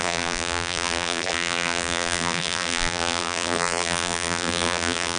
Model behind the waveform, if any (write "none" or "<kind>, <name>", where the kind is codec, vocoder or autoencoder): vocoder, BigVGAN v2